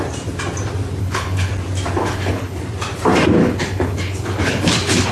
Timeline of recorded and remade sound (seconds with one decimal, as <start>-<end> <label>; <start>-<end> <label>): 0.0-1.0 recorded; 1.0-1.5 remade; 1.5-2.0 recorded; 2.0-2.6 remade; 2.6-3.4 recorded; 3.4-5.1 remade